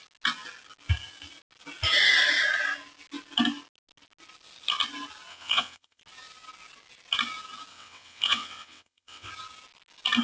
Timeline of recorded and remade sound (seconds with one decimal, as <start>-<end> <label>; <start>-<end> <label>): 0.0-5.3 recorded; 5.3-6.0 remade; 6.0-7.7 recorded; 7.7-9.3 remade; 9.3-10.2 recorded